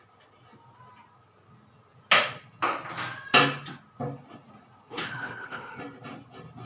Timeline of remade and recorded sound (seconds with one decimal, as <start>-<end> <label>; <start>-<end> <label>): 0.0-4.8 recorded; 4.8-5.8 remade; 5.8-6.7 recorded